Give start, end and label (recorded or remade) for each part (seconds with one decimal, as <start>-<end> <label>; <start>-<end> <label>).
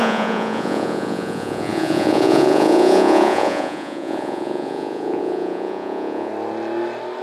0.0-6.3 remade; 6.3-7.2 recorded